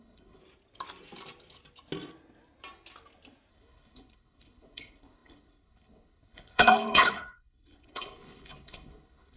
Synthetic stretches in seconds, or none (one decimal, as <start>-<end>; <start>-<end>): 0.0-0.4; 3.5-9.4